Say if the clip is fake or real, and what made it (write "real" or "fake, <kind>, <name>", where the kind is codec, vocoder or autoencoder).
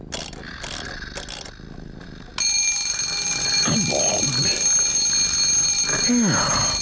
real